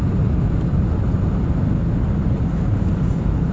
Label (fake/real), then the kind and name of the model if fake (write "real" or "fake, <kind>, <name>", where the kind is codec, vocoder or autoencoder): real